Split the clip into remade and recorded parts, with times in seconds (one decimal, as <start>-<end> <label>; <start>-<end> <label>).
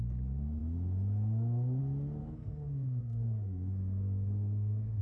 0.0-2.2 recorded; 2.2-5.0 remade